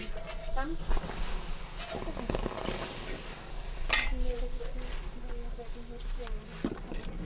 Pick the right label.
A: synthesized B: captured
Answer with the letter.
B